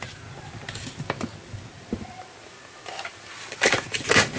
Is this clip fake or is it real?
real